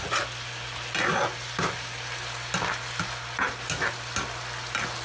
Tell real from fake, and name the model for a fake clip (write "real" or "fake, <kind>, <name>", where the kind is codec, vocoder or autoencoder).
real